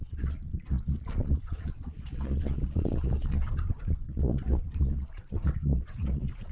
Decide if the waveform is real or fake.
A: fake